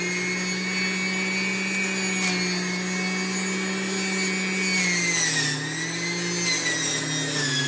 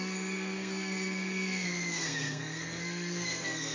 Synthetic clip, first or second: second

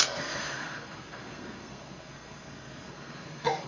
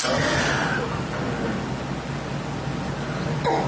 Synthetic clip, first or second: first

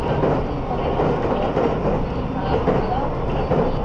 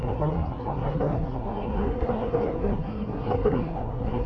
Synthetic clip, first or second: second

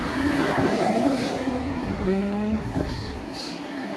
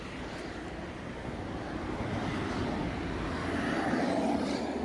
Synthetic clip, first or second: first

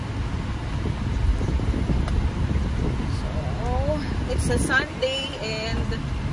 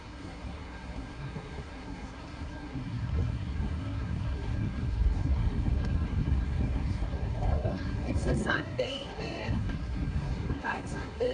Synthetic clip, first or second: second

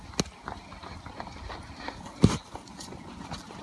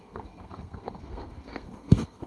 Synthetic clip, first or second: second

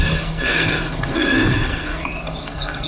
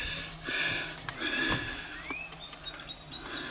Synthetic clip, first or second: first